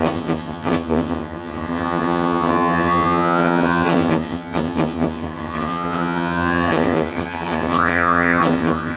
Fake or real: fake